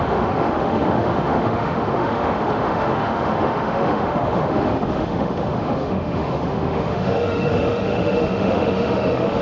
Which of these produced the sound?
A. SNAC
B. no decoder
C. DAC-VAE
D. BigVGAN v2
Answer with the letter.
C